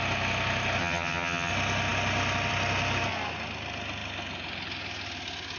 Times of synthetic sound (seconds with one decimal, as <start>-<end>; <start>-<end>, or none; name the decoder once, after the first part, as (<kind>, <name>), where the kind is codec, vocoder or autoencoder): 0.8-1.5 (vocoder, HiFi-GAN)